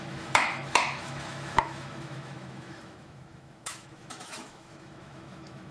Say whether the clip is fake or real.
fake